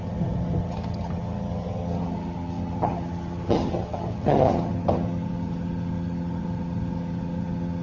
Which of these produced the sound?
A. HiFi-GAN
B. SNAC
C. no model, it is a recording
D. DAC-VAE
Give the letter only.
A